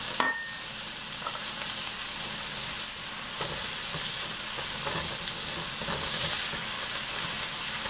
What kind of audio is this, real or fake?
real